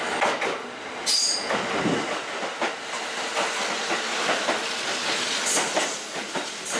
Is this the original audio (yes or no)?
yes